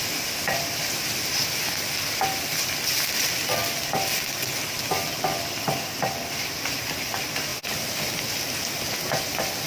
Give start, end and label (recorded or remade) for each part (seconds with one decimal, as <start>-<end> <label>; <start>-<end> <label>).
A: 0.0-9.7 recorded